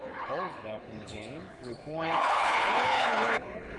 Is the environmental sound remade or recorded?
remade